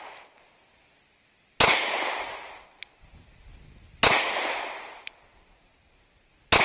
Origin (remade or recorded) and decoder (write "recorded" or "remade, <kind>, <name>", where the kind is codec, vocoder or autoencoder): recorded